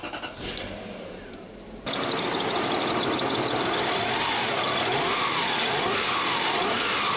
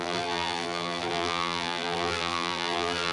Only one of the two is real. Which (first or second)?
first